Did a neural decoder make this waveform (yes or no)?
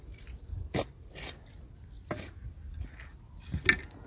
no